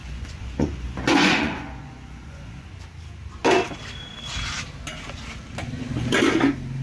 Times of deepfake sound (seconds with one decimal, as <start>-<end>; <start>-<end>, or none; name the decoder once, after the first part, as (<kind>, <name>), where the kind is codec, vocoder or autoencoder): 0.0-2.7 (vocoder, Vocos)